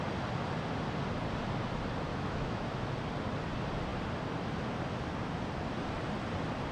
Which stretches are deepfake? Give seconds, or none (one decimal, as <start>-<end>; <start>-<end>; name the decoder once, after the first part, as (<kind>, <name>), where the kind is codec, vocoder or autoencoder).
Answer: 2.1-2.8 (autoencoder, DAC-VAE)